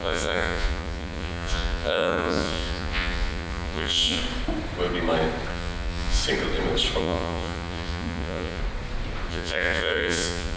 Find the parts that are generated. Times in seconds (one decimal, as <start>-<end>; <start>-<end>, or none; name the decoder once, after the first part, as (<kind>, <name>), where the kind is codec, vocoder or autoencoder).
0.0-4.2 (vocoder, Vocos); 5.5-6.2; 7.0-8.6; 9.3-10.6